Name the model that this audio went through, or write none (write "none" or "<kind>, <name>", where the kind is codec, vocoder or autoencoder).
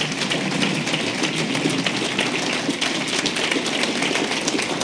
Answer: none